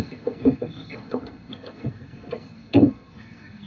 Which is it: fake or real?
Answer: fake